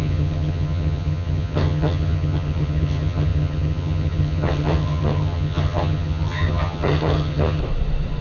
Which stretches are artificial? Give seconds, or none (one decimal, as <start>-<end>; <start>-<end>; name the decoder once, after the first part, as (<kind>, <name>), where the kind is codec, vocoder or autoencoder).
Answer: 0.0-7.6 (vocoder, HiFi-GAN)